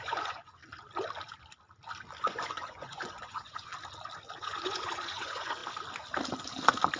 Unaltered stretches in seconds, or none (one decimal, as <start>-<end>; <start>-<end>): 0.6-2.2; 3.7-4.4; 5.6-7.0